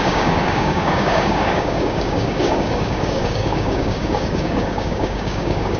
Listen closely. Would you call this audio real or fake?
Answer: fake